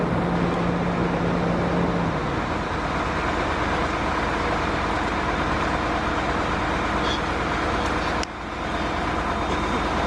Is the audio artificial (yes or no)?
no